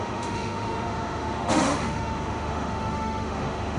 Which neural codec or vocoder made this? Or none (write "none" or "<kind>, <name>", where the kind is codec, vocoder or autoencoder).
autoencoder, DAC-VAE